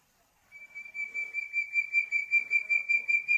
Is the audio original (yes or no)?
no